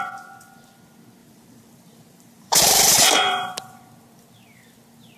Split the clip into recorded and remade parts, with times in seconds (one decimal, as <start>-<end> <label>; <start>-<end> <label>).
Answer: 0.0-1.2 recorded; 1.2-3.8 remade; 3.8-5.2 recorded